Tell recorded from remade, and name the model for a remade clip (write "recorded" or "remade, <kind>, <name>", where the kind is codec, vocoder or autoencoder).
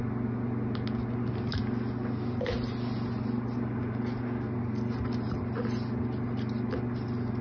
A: recorded